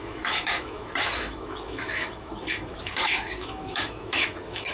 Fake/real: fake